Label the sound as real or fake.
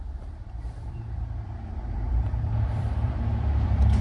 fake